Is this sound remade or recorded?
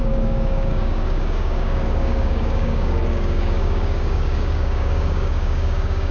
remade